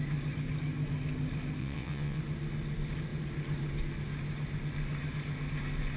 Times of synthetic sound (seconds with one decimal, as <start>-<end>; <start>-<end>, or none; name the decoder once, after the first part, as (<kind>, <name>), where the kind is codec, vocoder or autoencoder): 1.6-2.2 (vocoder, WaveNeXt)